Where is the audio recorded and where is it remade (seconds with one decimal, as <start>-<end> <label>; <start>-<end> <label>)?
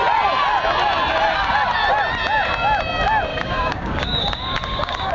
0.0-3.3 recorded; 3.3-5.1 remade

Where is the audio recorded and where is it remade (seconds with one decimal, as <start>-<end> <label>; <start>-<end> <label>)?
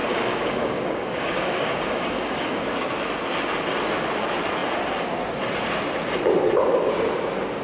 0.0-2.6 remade; 2.6-7.6 recorded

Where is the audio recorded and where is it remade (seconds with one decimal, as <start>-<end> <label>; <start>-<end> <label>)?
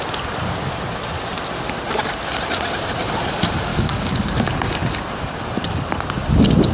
0.0-3.7 recorded; 3.7-4.5 remade; 4.5-6.7 recorded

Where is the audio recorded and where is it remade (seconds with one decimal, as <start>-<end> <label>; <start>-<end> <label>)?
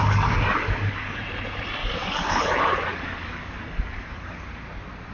0.0-1.2 remade; 1.2-1.8 recorded; 1.8-2.4 remade; 2.4-2.9 recorded; 2.9-4.4 remade; 4.4-5.1 recorded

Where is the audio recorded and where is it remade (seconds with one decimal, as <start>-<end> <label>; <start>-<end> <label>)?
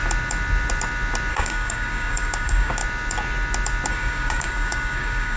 0.0-1.3 recorded; 1.3-2.8 remade; 2.8-3.9 recorded; 3.9-5.4 remade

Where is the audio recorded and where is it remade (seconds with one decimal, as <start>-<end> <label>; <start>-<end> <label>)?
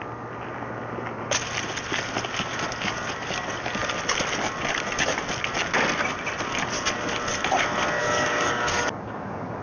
0.0-8.0 recorded; 8.0-9.6 remade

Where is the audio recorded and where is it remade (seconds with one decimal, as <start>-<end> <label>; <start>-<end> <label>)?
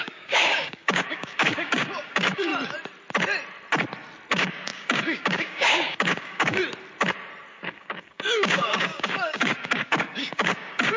0.0-2.5 remade; 2.5-4.3 recorded; 4.3-6.6 remade; 6.6-7.5 recorded; 7.5-11.0 remade